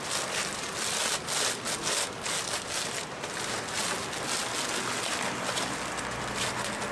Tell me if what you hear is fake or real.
real